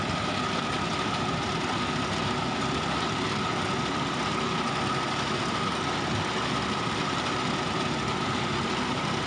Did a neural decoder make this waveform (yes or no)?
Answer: no